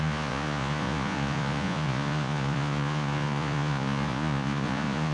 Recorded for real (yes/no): no